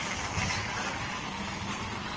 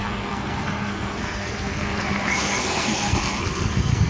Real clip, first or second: first